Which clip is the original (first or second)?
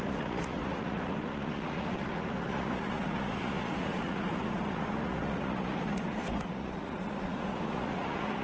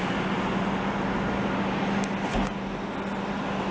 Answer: second